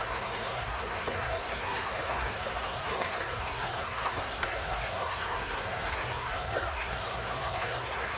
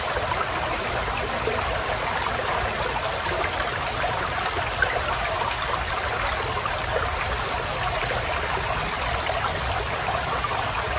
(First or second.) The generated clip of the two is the first